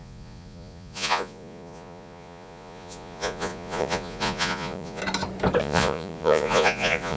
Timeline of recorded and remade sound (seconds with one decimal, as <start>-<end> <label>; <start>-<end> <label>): 0.0-5.0 remade; 5.0-5.6 recorded; 5.6-7.2 remade